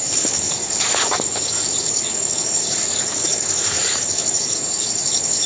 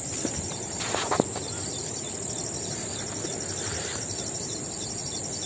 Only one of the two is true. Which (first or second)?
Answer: second